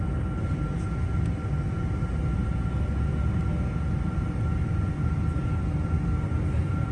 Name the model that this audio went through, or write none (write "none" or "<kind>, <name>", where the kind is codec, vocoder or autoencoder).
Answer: none